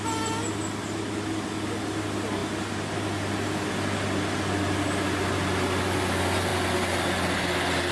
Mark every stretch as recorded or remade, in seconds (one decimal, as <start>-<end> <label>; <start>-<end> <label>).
0.0-7.9 recorded